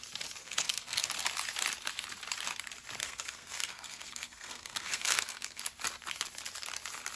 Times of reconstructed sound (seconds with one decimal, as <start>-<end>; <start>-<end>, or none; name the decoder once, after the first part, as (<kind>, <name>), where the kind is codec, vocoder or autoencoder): 0.4-1.1 (codec, SNAC); 3.0-5.6